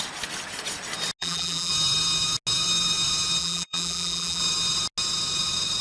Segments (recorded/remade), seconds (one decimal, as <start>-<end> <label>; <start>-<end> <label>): 0.0-1.2 recorded; 1.2-1.7 remade; 1.7-3.4 recorded; 3.4-4.4 remade; 4.4-5.8 recorded